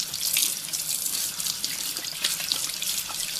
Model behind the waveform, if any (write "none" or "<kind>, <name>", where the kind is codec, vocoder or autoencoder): vocoder, BigVGAN v2